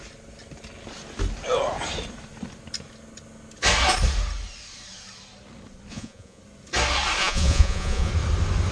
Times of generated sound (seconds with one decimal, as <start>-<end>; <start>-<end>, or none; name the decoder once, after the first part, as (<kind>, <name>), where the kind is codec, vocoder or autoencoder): 5.9-6.4 (vocoder, Vocos); 7.2-8.1